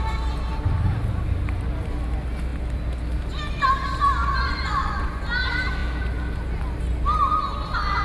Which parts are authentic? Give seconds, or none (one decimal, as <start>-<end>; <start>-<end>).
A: 0.0-4.2; 5.2-8.0